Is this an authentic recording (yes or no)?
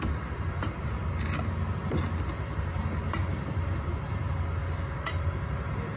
yes